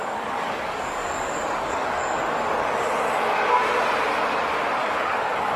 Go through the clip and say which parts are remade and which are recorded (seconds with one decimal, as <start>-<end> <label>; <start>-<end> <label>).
0.0-2.2 remade; 2.2-4.8 recorded; 4.8-5.6 remade

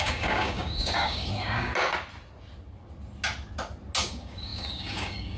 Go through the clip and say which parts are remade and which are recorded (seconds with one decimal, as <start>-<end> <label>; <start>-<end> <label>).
0.0-1.7 remade; 1.7-4.0 recorded; 4.0-5.4 remade

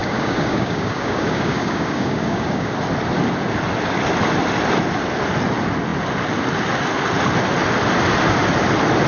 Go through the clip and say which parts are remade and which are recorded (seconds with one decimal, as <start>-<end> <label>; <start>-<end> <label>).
0.0-2.7 remade; 2.7-9.1 recorded

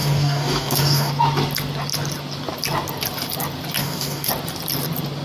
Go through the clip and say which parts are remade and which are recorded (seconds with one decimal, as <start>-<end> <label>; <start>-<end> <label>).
0.0-1.1 remade; 1.1-3.8 recorded; 3.8-4.3 remade; 4.3-5.2 recorded

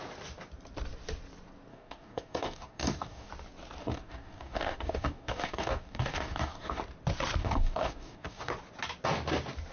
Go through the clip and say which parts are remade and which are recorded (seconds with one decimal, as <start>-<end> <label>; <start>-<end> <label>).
0.0-1.7 recorded; 1.7-3.3 remade; 3.3-3.8 recorded; 3.8-6.8 remade; 6.8-7.4 recorded; 7.4-8.5 remade; 8.5-9.7 recorded

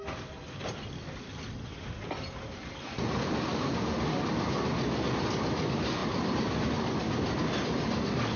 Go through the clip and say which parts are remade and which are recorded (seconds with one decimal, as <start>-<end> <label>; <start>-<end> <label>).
0.0-8.4 recorded